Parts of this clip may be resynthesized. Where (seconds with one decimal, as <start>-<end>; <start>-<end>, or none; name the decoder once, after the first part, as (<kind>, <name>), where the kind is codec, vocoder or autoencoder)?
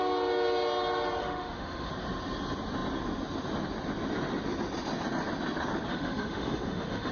1.2-1.9 (autoencoder, DAC-VAE); 5.9-7.1